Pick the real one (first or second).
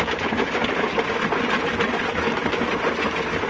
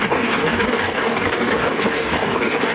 first